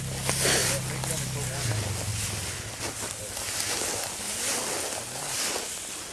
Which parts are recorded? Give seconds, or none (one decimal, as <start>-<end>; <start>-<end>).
0.0-6.1